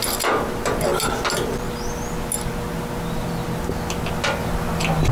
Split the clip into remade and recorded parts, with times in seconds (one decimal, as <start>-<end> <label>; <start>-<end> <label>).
0.0-5.1 recorded